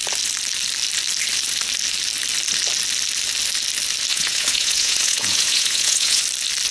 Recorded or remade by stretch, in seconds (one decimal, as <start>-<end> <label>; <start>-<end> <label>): 0.0-4.1 recorded; 4.1-6.2 remade; 6.2-6.7 recorded